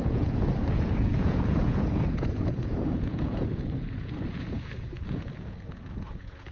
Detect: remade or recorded remade